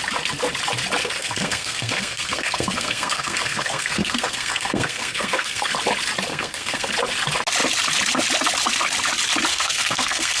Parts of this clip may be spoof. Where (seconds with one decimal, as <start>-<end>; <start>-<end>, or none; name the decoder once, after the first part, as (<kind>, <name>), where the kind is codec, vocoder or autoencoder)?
1.0-5.7 (codec, SNAC); 6.3-6.9; 9.5-10.4